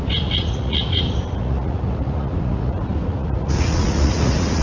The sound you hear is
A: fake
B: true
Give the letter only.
A